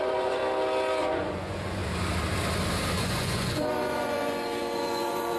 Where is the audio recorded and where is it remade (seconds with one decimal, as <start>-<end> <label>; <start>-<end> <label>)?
0.0-0.4 remade; 0.4-1.0 recorded; 1.0-1.8 remade; 1.8-3.0 recorded; 3.0-5.4 remade